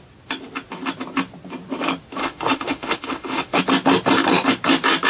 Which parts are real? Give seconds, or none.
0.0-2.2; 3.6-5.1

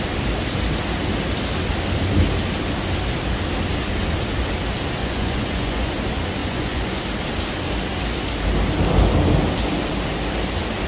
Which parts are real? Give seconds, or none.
0.0-5.0; 5.9-6.4; 7.0-10.9